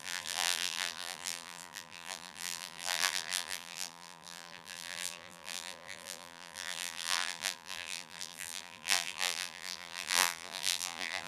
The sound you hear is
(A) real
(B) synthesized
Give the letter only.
B